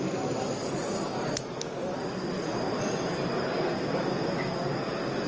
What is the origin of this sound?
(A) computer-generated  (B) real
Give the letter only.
B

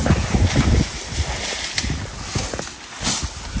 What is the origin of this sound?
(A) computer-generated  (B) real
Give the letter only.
B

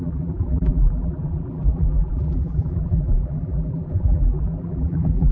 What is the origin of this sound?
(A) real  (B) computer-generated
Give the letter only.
B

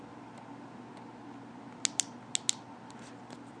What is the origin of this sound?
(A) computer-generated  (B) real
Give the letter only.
B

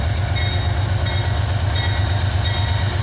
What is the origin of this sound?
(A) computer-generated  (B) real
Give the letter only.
B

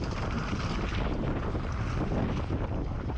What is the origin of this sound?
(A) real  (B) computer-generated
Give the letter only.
A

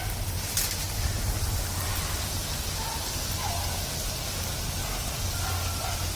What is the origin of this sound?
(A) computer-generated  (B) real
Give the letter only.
B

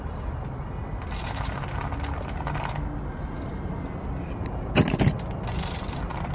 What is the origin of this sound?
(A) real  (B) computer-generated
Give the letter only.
A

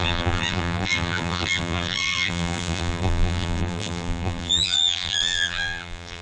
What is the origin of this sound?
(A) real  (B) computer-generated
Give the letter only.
B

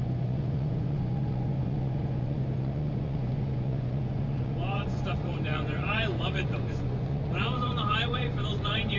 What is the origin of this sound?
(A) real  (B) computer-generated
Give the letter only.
B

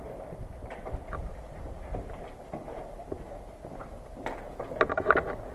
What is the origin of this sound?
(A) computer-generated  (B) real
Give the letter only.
B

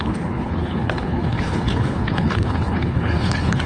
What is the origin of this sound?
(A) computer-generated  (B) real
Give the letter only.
A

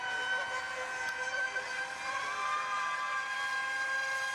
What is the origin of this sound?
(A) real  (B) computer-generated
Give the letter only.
A